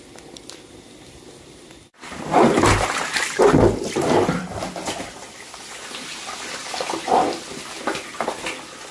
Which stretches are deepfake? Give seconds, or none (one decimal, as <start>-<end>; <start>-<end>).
none